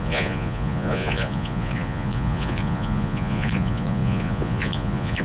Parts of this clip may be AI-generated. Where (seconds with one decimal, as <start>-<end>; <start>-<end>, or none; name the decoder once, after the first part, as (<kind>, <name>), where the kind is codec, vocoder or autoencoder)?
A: 0.0-5.2 (vocoder, Vocos)